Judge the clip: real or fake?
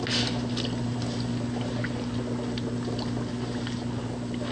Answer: real